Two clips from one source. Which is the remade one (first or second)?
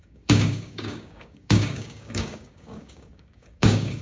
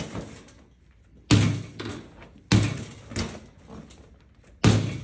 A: first